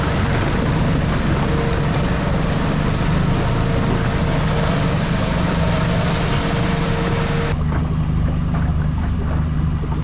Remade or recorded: recorded